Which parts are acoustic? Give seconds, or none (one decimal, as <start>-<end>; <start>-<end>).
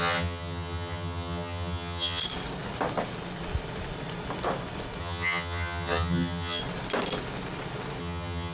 2.2-5.0; 6.6-8.0